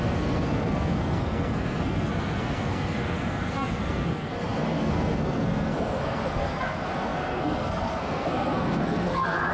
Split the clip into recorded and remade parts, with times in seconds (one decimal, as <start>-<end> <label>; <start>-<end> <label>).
0.0-9.5 remade